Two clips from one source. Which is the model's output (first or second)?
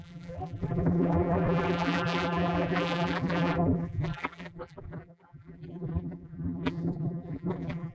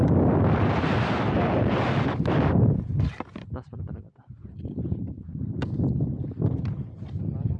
first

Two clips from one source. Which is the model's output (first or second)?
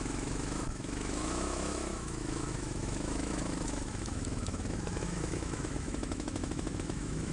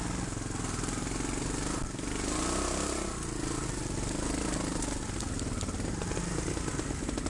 first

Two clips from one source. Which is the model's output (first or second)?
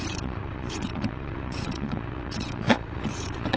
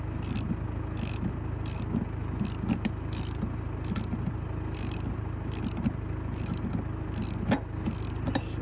first